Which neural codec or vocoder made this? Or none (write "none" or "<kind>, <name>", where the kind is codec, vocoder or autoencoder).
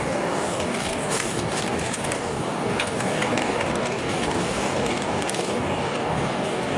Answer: codec, DAC